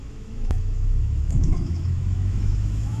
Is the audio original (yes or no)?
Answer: no